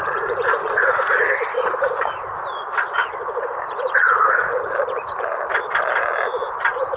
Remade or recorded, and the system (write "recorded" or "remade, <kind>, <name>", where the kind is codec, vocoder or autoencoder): recorded